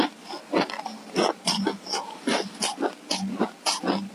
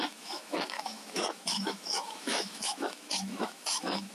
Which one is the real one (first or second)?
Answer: first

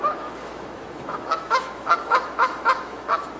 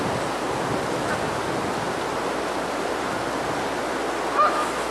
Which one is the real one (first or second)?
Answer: second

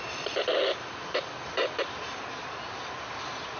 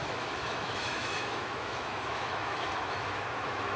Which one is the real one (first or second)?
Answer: first